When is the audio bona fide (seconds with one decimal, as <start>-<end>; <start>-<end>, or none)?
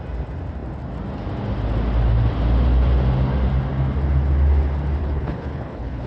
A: 0.0-5.0